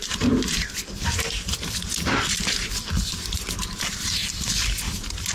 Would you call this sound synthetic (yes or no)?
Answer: no